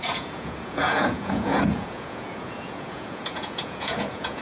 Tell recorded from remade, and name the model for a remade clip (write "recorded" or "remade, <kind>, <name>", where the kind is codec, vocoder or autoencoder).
remade, vocoder, Vocos